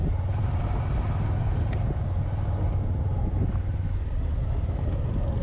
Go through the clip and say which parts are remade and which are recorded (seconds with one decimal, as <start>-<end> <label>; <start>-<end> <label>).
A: 0.0-5.4 recorded